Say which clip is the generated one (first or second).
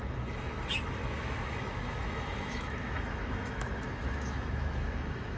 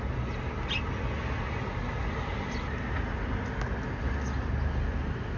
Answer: first